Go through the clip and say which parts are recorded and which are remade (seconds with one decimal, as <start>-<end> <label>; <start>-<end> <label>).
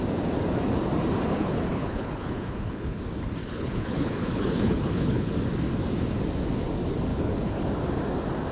0.0-1.3 recorded; 1.3-3.0 remade; 3.0-3.4 recorded; 3.4-5.3 remade; 5.3-7.1 recorded; 7.1-7.7 remade; 7.7-8.5 recorded